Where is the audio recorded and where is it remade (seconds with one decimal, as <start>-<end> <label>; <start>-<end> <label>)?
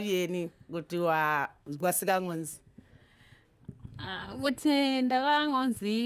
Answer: 0.0-1.5 recorded; 1.5-2.9 remade; 2.9-3.8 recorded; 3.8-6.1 remade